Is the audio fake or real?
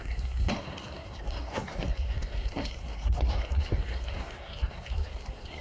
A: fake